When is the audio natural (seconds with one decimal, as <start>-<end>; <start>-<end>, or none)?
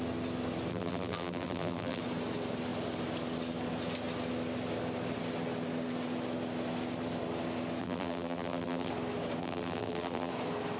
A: 0.0-0.7; 2.0-7.8; 8.9-9.4; 10.3-10.8